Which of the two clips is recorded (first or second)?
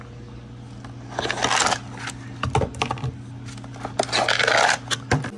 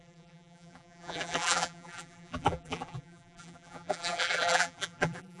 first